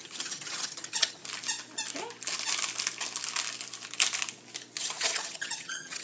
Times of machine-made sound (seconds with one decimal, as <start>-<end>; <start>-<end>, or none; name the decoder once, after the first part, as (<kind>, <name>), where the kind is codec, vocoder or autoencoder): 0.0-1.2 (vocoder, HiFi-GAN); 4.8-6.0